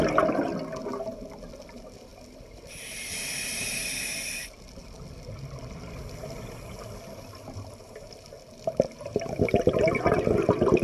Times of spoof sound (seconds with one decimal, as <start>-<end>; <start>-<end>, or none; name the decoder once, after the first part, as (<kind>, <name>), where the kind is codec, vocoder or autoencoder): none